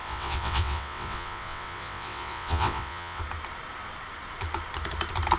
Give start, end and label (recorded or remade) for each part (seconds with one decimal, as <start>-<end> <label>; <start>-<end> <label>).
0.0-3.2 remade; 3.2-5.4 recorded